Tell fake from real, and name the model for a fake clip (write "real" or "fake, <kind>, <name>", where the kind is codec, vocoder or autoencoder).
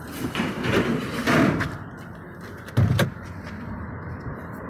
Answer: real